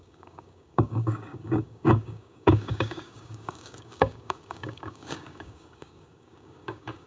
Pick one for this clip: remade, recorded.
remade